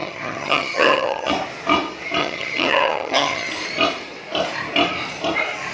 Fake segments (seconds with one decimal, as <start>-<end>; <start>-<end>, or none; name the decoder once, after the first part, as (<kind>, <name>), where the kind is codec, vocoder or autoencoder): 0.0-1.3 (vocoder, HiFi-GAN); 2.2-3.5